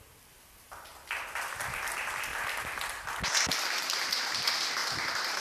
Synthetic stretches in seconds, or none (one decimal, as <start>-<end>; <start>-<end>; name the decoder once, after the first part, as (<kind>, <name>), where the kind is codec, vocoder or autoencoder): 0.0-0.9 (vocoder, BigVGAN v2); 1.8-2.3; 4.2-4.8